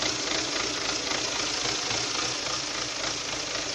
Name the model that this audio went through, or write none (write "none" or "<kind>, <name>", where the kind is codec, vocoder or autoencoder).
none